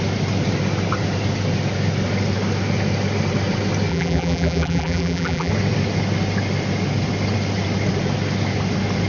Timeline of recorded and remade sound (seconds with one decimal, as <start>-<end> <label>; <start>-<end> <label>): 0.0-3.9 recorded; 3.9-5.5 remade; 5.5-9.1 recorded